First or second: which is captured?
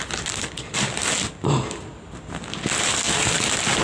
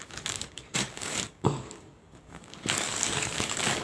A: first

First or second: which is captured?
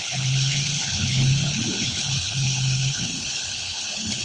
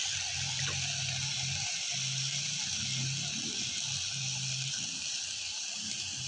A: second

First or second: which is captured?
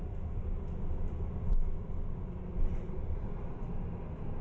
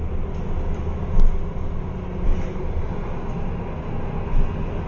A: second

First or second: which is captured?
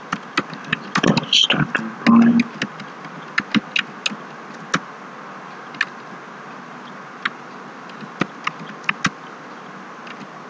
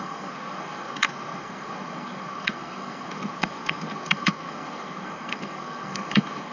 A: first